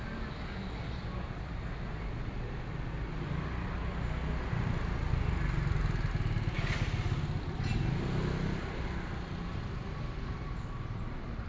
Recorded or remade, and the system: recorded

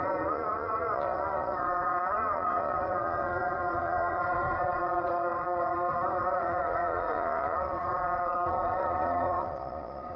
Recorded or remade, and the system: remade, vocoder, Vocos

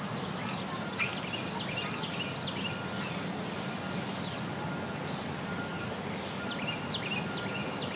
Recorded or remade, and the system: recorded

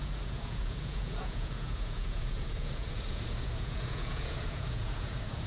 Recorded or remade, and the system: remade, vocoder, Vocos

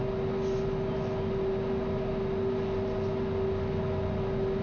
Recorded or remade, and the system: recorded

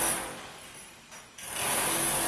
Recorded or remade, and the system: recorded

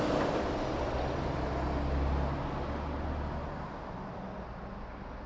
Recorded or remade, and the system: recorded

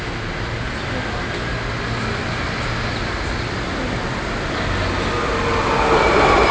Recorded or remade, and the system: recorded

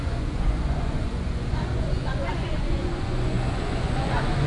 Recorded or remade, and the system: remade, vocoder, Vocos